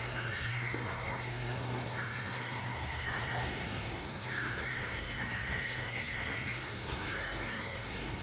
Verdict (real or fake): fake